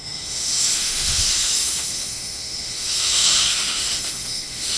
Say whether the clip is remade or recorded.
remade